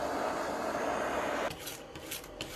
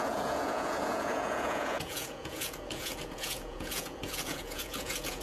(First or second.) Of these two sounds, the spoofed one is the second